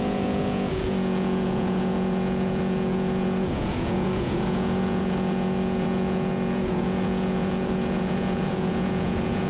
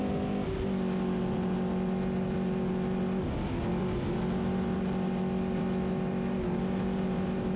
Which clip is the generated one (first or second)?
first